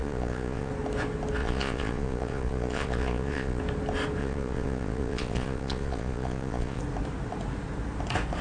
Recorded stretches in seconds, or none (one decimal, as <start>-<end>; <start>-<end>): 0.7-1.4; 3.6-4.2; 6.8-8.4